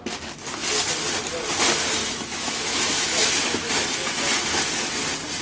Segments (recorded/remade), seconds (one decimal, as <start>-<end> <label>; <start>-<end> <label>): 0.0-2.0 recorded; 2.0-3.7 remade; 3.7-5.4 recorded